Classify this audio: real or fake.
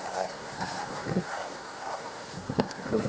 fake